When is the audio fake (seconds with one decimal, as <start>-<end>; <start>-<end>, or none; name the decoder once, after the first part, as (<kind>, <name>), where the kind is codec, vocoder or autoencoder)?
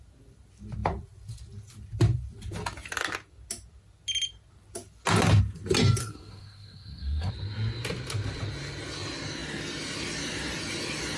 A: 6.0-7.3 (codec, SNAC)